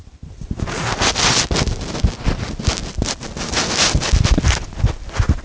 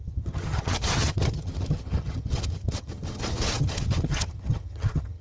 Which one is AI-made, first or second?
second